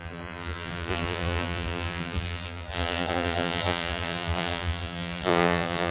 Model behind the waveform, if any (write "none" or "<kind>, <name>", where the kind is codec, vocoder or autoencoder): vocoder, BigVGAN v2